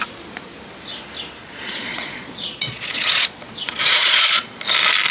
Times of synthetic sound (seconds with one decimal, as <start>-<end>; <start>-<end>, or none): 1.4-4.5